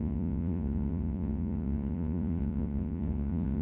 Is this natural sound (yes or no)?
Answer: no